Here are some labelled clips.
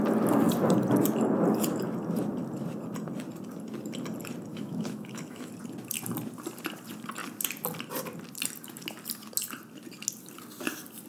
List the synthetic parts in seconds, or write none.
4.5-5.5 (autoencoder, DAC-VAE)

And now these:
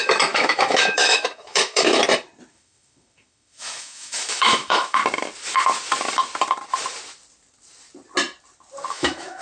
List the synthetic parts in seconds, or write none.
0.0-2.0 (autoencoder, DAC-VAE); 2.5-5.0; 8.9-9.4

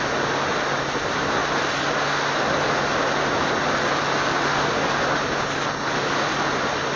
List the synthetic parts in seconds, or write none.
none

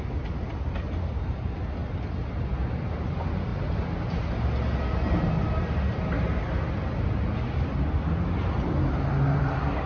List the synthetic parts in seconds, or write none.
none

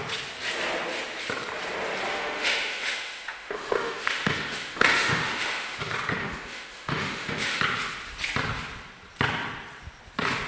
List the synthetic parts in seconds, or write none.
2.1-5.8 (autoencoder, DAC-VAE); 6.2-7.6